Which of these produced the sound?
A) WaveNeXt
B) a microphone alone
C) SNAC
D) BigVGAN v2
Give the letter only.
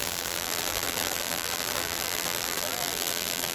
D